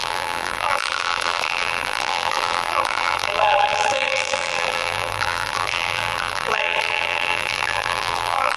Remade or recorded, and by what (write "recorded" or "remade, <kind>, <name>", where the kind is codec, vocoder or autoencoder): remade, vocoder, BigVGAN v2